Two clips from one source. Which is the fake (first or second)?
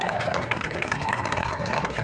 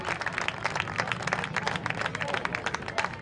first